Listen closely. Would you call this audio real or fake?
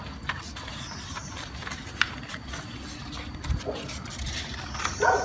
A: real